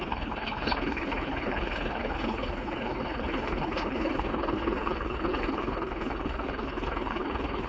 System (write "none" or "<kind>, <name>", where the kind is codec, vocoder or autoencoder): codec, HILCodec